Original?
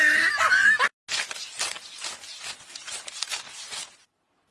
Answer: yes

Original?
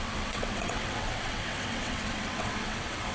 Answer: no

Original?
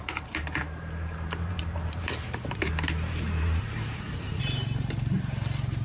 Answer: no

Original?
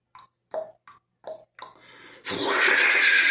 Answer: yes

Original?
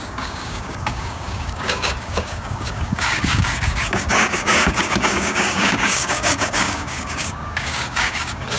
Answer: no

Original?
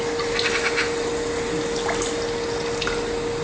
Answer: yes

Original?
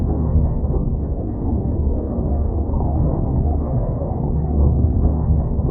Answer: no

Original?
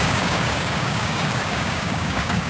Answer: no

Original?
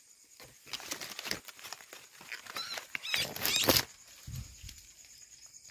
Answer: yes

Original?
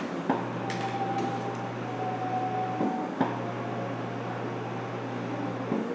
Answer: yes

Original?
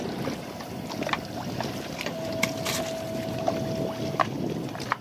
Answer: yes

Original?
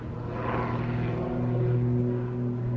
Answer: yes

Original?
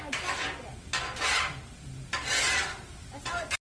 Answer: yes